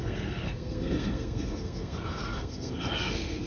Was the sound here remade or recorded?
remade